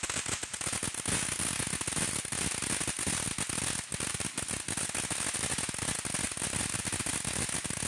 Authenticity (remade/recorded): recorded